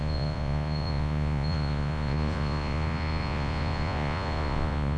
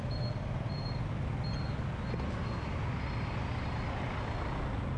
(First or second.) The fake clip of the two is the first